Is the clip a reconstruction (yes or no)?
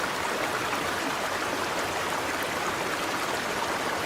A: yes